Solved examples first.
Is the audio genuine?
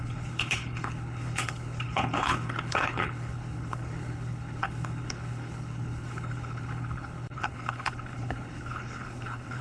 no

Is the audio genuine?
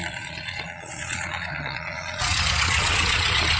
no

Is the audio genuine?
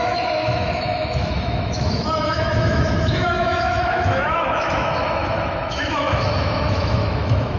no